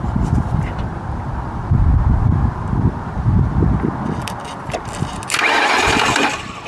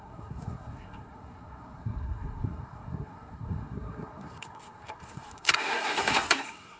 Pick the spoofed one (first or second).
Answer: second